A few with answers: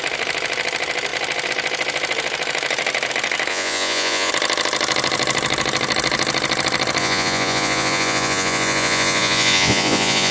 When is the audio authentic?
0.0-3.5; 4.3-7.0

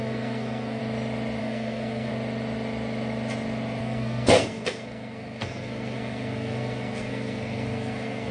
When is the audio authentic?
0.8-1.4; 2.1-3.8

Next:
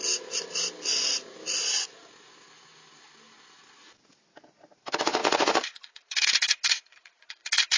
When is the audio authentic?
0.0-5.2